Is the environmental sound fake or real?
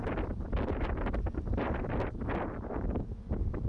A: real